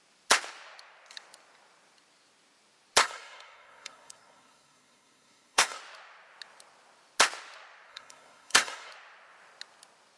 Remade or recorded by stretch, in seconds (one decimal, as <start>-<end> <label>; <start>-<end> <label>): 0.0-3.0 recorded; 3.0-5.8 remade; 5.8-7.9 recorded; 7.9-8.9 remade; 8.9-10.2 recorded